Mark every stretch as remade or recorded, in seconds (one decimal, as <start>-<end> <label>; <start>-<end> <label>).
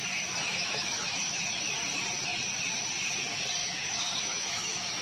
0.0-0.4 recorded; 0.4-1.6 remade; 1.6-3.6 recorded; 3.6-5.0 remade